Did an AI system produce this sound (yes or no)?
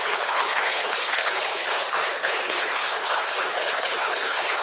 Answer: yes